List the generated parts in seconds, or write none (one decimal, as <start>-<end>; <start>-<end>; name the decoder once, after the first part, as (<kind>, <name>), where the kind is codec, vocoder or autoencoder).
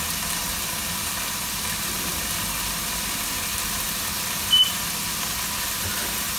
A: none